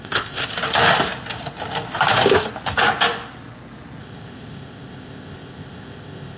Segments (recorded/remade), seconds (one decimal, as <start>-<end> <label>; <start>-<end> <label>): 0.0-0.4 remade; 0.4-4.0 recorded; 4.0-6.4 remade